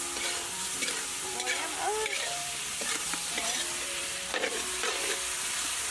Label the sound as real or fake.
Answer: fake